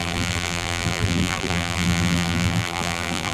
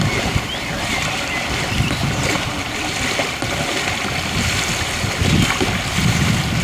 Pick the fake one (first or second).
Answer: first